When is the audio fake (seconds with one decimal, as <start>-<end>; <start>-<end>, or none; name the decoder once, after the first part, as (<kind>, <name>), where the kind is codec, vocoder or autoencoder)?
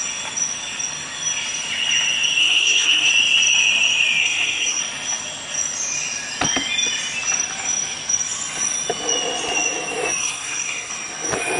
2.4-3.1 (codec, SNAC); 4.2-4.8; 10.2-10.9